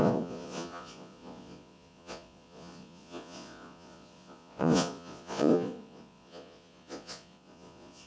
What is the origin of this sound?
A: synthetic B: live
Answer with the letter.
A